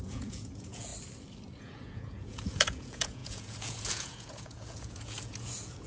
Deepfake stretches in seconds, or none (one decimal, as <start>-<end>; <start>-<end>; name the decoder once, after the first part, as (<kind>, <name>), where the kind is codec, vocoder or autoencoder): 0.0-0.9 (vocoder, Vocos); 1.6-5.9